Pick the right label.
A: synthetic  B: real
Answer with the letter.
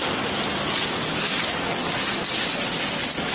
B